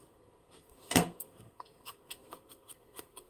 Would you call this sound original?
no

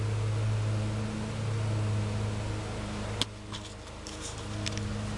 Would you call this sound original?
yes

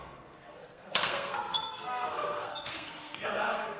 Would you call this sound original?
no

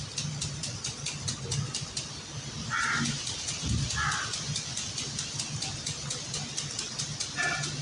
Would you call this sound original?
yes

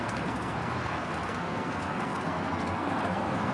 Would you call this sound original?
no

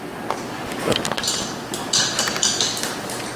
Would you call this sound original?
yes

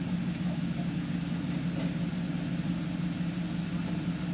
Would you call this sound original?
yes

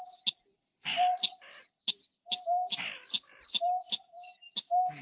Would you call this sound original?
yes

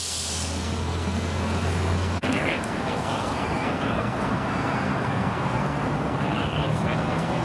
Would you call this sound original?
no